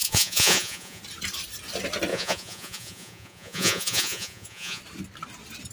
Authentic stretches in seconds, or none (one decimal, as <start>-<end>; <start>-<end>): 1.0-2.1; 4.8-5.7